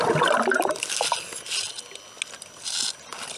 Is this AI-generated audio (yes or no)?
no